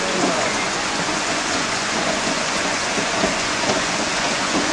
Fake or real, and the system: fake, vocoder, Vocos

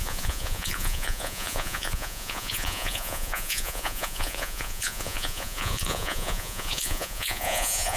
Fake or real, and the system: fake, vocoder, Vocos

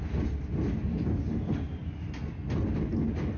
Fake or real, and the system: real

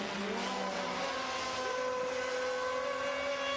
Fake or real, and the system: real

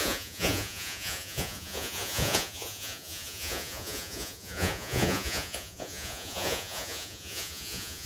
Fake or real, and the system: fake, vocoder, Vocos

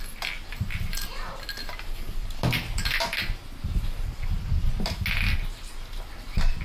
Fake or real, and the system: real